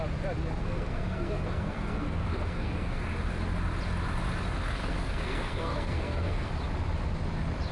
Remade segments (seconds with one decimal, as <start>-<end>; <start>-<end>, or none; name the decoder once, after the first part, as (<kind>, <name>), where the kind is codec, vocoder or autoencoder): 0.6-3.0 (codec, SNAC); 4.8-6.5